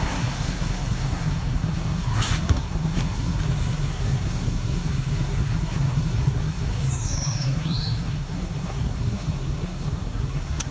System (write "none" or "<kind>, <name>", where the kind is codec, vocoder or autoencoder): codec, SNAC